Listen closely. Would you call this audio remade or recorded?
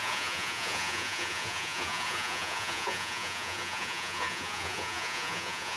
remade